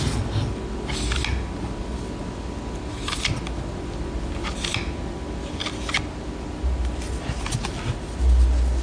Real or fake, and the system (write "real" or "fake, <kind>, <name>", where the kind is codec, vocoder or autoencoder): real